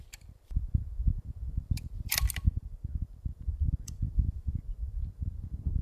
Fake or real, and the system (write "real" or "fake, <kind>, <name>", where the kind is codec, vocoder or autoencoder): fake, vocoder, BigVGAN v2